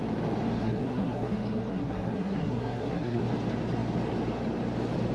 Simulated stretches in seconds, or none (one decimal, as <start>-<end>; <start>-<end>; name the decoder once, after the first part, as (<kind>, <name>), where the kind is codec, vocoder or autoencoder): 0.6-3.2 (codec, SNAC)

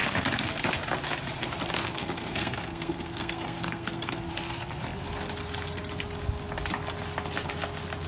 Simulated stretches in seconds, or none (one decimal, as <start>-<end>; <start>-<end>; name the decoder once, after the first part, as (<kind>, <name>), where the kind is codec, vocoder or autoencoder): 0.0-0.6 (codec, SNAC); 1.8-4.3

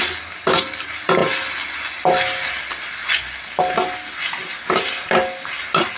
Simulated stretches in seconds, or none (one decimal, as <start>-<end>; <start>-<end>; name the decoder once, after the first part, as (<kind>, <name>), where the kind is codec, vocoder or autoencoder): none

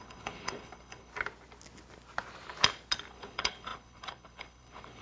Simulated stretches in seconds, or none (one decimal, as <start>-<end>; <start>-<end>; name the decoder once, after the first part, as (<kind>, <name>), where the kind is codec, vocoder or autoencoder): 0.0-1.1 (codec, HILCodec); 3.1-5.0

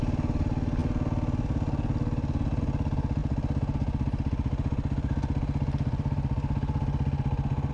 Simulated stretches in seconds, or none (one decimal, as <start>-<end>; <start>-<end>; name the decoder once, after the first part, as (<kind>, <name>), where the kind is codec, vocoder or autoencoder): none

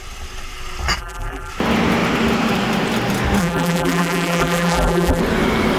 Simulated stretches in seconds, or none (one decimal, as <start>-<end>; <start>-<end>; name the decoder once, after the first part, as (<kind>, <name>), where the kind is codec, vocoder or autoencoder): 1.0-1.5 (vocoder, BigVGAN v2); 3.4-5.2